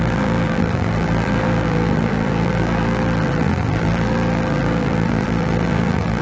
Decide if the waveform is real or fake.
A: fake